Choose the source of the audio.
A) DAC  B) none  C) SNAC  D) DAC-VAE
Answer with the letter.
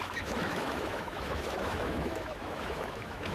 D